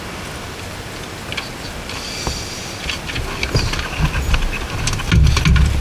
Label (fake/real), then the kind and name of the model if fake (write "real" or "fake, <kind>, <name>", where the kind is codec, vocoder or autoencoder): real